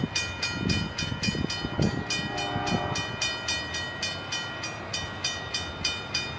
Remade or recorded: recorded